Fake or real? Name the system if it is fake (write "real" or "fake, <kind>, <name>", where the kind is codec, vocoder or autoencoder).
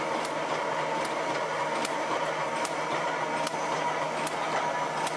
real